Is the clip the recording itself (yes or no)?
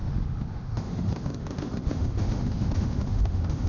no